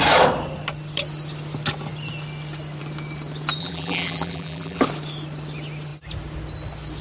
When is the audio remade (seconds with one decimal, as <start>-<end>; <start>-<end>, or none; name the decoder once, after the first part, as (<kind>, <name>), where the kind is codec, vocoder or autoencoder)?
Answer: 3.6-4.8 (vocoder, BigVGAN v2)